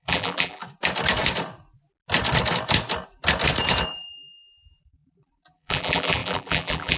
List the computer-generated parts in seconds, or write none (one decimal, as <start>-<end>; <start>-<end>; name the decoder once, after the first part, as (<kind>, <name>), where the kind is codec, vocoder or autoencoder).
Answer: 0.0-0.6 (vocoder, BigVGAN v2); 4.8-7.0